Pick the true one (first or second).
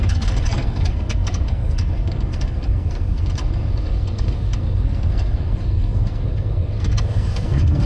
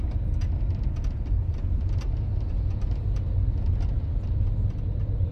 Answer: second